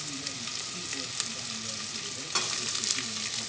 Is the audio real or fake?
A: real